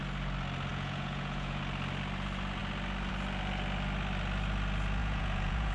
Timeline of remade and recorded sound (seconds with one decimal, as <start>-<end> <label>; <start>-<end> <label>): 0.0-0.7 recorded; 0.7-1.6 remade; 1.6-5.0 recorded; 5.0-5.7 remade